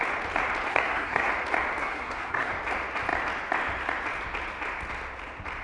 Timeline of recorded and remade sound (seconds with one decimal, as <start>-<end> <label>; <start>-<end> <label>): 0.0-0.7 recorded; 0.7-1.3 remade; 1.3-1.8 recorded; 1.8-2.5 remade; 2.5-5.6 recorded